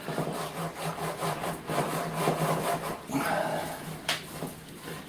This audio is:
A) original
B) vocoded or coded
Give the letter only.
A